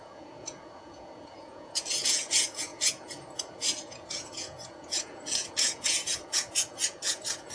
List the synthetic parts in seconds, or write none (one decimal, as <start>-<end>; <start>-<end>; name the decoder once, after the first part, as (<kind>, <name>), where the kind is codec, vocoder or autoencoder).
0.0-7.5 (vocoder, Vocos)